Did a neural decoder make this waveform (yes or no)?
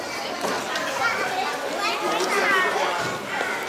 no